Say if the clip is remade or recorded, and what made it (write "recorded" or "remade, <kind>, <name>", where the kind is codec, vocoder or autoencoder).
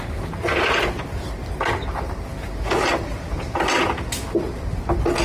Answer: recorded